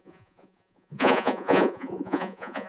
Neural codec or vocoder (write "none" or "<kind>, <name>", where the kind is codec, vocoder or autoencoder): vocoder, Vocos